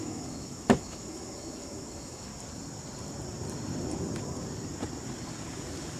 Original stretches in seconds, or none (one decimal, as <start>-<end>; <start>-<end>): 2.3-6.0